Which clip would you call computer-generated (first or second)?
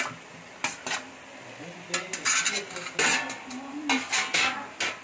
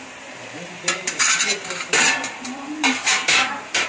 second